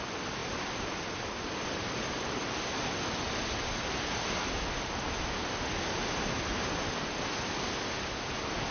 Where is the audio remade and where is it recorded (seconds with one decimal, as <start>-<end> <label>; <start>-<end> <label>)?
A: 0.0-8.7 recorded